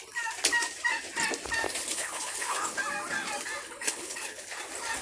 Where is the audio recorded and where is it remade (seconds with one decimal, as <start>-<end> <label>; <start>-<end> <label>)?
0.0-1.8 recorded; 1.8-2.8 remade; 2.8-3.6 recorded; 3.6-4.6 remade; 4.6-5.0 recorded